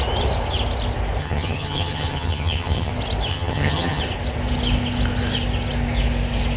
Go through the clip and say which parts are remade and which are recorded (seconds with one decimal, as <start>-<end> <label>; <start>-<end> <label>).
0.0-1.2 recorded; 1.2-2.9 remade; 2.9-3.3 recorded; 3.3-4.0 remade; 4.0-6.6 recorded

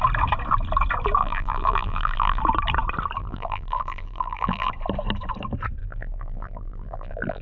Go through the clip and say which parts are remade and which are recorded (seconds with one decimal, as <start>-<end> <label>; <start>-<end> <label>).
0.0-1.2 recorded; 1.2-2.4 remade; 2.4-3.2 recorded; 3.2-4.7 remade; 4.7-5.8 recorded; 5.8-7.4 remade

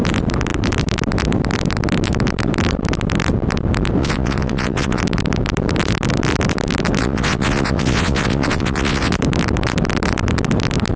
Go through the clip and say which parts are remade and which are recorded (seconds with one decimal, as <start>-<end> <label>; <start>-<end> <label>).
0.0-4.0 recorded; 4.0-5.0 remade; 5.0-7.0 recorded; 7.0-9.1 remade; 9.1-11.0 recorded

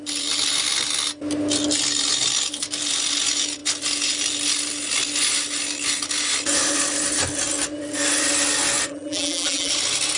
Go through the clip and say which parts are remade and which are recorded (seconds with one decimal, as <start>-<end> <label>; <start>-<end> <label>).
0.0-8.9 recorded; 8.9-9.7 remade; 9.7-10.2 recorded

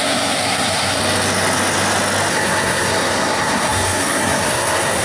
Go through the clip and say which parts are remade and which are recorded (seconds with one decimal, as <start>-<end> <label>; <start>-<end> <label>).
0.0-1.0 remade; 1.0-2.3 recorded; 2.3-5.0 remade